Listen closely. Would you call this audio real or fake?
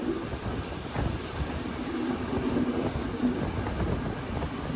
real